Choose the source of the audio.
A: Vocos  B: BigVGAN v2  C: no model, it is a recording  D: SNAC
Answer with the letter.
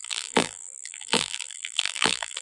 B